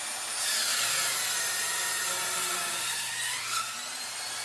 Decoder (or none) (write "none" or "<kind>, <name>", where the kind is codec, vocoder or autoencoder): none